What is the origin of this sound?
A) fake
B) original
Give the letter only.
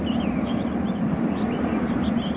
B